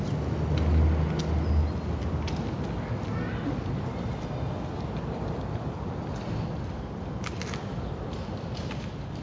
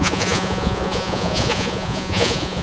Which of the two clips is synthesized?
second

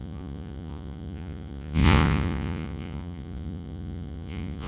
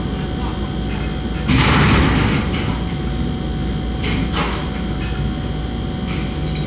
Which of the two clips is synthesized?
first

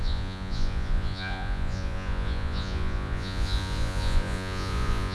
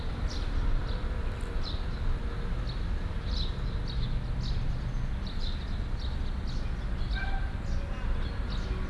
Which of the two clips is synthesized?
first